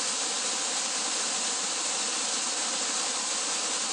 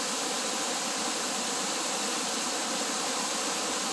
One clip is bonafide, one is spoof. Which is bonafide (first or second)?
first